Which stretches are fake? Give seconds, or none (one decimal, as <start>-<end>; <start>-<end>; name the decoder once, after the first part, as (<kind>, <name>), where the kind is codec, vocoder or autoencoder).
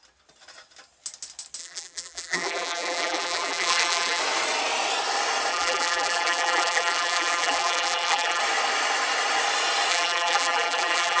1.6-4.2 (vocoder, BigVGAN v2); 5.5-8.4; 9.9-11.2